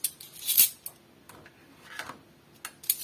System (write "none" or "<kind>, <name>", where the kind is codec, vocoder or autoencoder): none